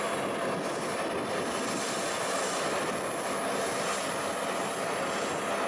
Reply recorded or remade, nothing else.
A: recorded